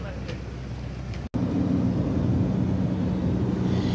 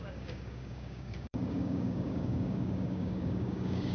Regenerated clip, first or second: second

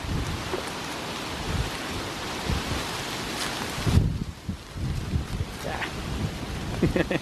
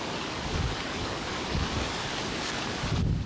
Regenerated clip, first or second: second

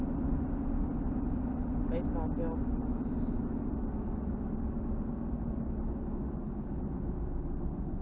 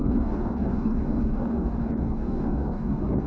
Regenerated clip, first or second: second